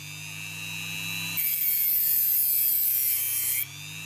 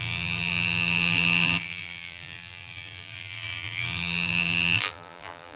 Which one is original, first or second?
first